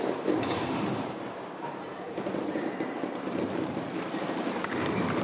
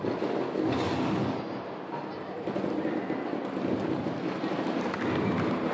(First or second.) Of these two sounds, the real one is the second